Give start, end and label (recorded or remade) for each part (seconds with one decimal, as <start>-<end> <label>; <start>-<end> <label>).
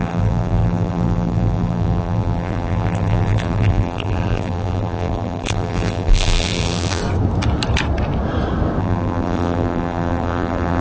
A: 0.0-7.0 remade; 7.0-8.8 recorded; 8.8-10.8 remade